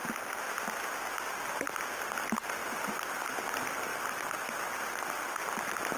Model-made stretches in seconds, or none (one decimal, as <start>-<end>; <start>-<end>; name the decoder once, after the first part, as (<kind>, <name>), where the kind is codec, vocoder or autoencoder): 2.6-3.3 (vocoder, BigVGAN v2); 3.9-5.2

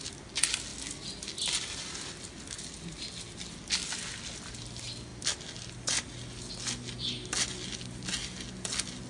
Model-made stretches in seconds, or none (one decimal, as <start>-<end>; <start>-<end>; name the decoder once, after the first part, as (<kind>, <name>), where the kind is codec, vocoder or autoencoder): none

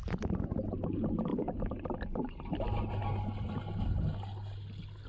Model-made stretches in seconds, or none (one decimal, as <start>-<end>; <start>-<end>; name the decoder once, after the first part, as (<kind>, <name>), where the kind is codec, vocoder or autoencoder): 1.3-2.9 (vocoder, BigVGAN v2)

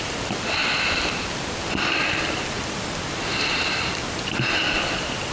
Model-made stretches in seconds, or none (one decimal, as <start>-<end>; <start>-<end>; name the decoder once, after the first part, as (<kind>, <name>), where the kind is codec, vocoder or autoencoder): 0.6-2.5 (vocoder, BigVGAN v2)

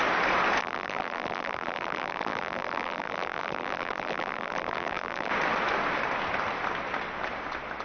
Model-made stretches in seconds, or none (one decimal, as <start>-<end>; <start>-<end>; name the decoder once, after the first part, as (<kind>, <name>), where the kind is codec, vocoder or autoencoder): 0.6-5.3 (vocoder, BigVGAN v2)

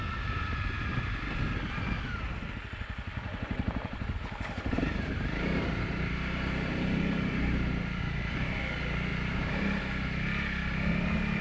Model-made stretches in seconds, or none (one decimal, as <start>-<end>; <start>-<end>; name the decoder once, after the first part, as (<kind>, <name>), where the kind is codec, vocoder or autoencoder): 3.1-8.0 (vocoder, BigVGAN v2); 9.1-9.8

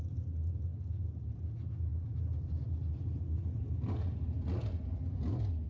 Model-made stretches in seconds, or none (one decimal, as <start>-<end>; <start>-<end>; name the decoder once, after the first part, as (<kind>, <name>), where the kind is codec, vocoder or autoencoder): none